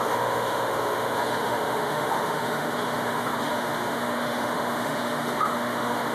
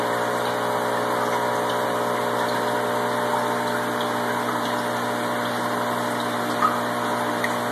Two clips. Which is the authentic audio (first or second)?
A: second